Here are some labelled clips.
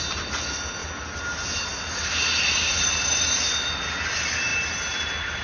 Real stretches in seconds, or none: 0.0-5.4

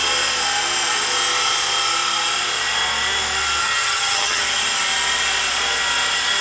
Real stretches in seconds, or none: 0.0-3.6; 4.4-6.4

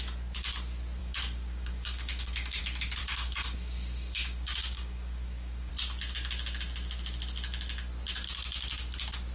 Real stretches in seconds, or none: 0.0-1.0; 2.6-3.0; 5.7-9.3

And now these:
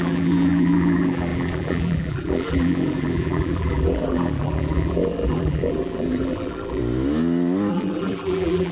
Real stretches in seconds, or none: 6.8-7.7